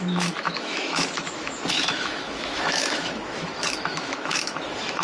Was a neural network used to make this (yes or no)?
yes